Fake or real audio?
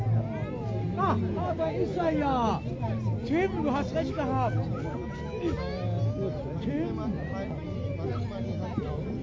real